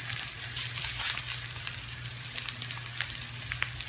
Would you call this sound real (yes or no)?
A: yes